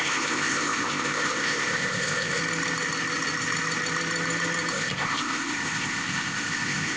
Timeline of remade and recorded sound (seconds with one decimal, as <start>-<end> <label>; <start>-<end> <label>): 0.0-2.4 remade; 2.4-4.7 recorded; 4.7-7.0 remade